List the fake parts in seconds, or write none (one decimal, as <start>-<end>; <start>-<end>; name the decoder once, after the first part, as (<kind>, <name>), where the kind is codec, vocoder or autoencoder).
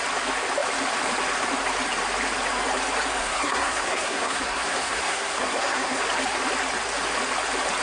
3.2-6.0 (codec, SNAC)